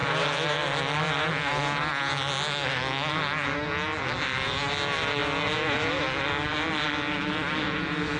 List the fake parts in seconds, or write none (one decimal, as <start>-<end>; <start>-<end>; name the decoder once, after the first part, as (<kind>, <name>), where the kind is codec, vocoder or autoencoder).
none